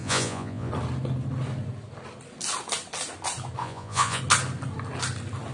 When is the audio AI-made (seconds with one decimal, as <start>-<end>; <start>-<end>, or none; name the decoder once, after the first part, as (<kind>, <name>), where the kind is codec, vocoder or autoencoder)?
0.0-0.7 (vocoder, Vocos); 3.6-4.2